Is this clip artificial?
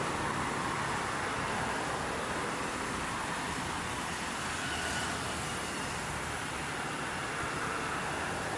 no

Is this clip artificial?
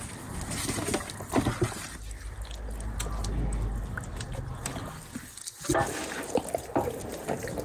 no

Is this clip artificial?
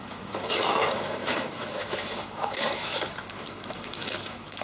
yes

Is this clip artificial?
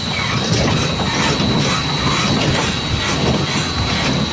no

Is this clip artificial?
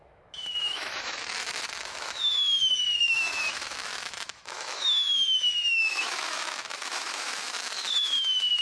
yes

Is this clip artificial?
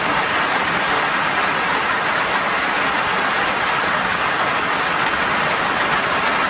no